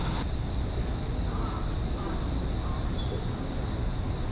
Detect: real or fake real